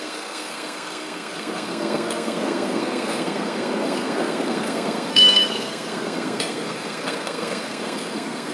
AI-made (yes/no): yes